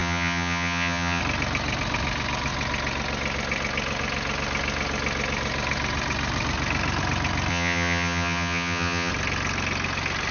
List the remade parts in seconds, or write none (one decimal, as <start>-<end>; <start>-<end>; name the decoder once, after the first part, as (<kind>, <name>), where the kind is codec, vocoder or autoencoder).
0.0-1.2 (vocoder, HiFi-GAN); 7.5-9.1